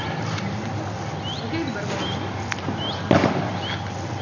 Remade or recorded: recorded